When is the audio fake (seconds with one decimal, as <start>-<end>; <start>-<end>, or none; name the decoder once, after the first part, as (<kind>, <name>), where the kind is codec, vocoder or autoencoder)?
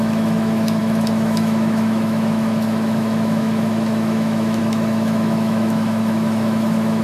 0.0-7.0 (autoencoder, DAC-VAE)